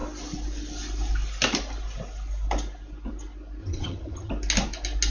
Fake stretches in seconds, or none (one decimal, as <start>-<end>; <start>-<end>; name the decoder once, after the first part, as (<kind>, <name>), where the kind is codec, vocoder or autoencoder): 3.6-4.3 (vocoder, HiFi-GAN)